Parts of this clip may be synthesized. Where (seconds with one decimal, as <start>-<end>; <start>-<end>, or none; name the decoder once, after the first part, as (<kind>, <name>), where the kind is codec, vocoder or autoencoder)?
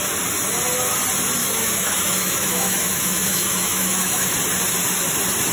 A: 1.4-4.3 (autoencoder, DAC-VAE)